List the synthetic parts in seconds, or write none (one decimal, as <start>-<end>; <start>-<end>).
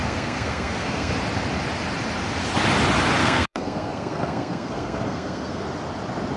0.0-1.1; 3.2-5.6